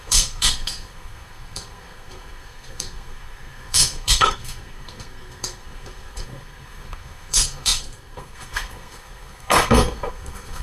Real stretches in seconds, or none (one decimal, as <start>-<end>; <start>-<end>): none